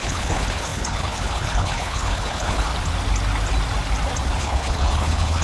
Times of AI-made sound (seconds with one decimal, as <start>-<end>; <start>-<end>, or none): 0.0-2.7; 4.4-5.4